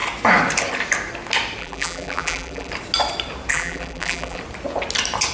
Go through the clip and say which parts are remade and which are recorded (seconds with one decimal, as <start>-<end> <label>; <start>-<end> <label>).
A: 0.0-1.6 recorded; 1.6-2.7 remade; 2.7-3.5 recorded; 3.5-4.4 remade; 4.4-5.3 recorded